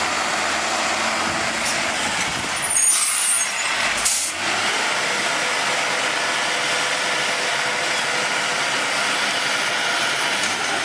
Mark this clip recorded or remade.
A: recorded